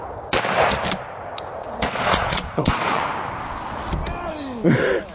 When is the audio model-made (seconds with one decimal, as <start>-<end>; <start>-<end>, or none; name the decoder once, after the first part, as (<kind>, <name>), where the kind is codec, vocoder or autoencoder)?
1.6-3.0 (vocoder, Vocos)